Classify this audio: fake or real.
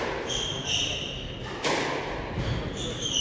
real